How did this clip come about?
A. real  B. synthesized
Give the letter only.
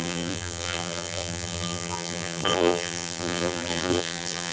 B